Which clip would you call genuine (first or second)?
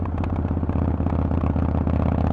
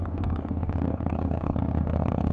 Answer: first